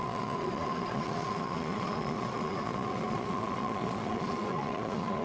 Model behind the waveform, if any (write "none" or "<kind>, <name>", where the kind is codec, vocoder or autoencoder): vocoder, Vocos